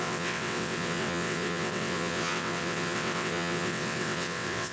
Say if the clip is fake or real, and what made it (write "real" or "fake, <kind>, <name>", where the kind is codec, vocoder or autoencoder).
fake, vocoder, WaveNeXt